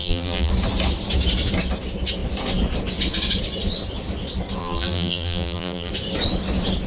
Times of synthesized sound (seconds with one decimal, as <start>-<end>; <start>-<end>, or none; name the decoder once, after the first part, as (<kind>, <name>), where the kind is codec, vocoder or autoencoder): 0.0-0.5 (vocoder, BigVGAN v2); 4.6-5.9